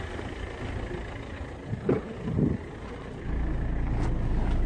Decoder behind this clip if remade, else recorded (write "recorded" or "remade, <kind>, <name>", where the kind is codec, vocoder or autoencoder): recorded